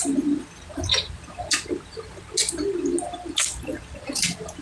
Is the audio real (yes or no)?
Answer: yes